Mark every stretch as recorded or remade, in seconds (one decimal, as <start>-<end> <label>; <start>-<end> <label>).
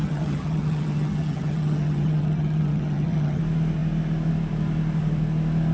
0.0-3.4 remade; 3.4-5.7 recorded